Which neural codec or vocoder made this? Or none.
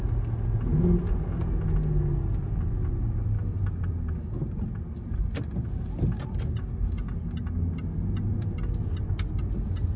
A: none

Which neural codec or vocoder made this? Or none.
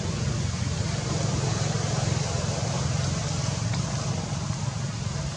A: none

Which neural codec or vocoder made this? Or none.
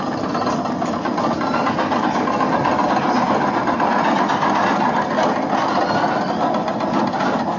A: none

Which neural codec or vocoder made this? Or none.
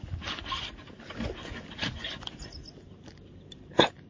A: none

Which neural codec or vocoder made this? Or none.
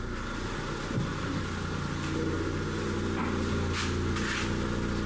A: none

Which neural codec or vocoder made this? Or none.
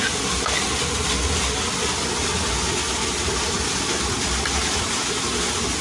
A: none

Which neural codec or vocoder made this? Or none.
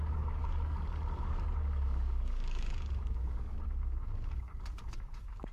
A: codec, DAC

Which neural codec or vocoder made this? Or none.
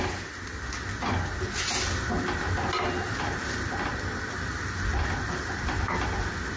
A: none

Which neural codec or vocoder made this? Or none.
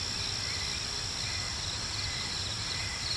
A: none